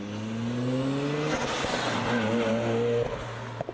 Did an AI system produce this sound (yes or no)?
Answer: no